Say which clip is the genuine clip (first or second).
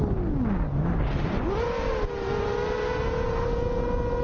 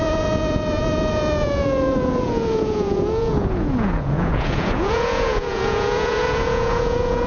first